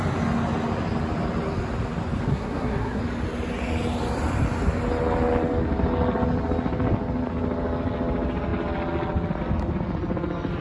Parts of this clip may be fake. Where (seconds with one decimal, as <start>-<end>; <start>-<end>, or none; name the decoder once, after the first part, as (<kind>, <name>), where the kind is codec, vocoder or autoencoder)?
2.3-3.0 (codec, SNAC)